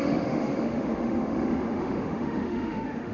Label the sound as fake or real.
fake